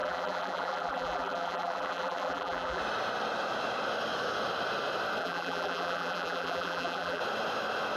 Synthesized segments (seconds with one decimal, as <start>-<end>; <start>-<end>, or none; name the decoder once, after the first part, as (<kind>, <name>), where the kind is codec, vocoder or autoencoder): 0.0-2.8 (vocoder, BigVGAN v2); 5.2-7.2